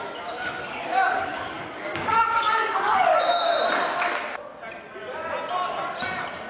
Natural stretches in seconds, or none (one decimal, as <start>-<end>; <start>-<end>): 0.0-0.7; 3.2-6.5

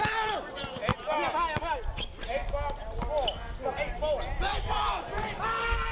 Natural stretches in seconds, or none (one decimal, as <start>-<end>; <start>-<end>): 0.0-5.9

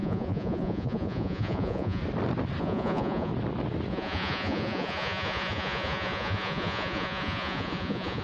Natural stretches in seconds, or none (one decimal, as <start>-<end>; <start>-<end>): 2.0-2.6; 3.3-3.9

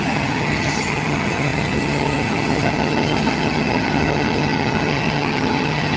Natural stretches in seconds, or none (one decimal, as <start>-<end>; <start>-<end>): none

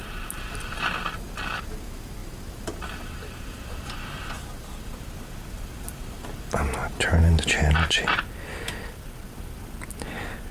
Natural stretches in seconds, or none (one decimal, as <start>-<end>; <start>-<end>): 0.0-10.5